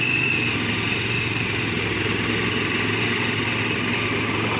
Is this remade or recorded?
recorded